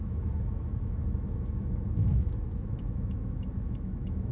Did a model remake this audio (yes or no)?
yes